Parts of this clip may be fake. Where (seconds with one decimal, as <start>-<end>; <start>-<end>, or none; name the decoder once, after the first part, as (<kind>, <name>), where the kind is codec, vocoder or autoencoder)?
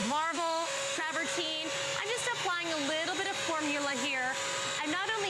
0.0-1.0 (autoencoder, DAC-VAE)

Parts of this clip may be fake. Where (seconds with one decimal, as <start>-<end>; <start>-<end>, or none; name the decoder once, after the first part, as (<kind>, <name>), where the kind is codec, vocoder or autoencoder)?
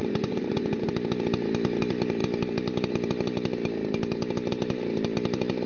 0.0-0.9 (vocoder, Vocos)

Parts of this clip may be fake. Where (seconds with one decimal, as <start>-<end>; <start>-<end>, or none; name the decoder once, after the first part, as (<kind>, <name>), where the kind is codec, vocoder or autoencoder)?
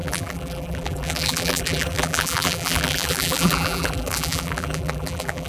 0.0-5.5 (vocoder, BigVGAN v2)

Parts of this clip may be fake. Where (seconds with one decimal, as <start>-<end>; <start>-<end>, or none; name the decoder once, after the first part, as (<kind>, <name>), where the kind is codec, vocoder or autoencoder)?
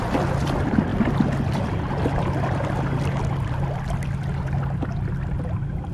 none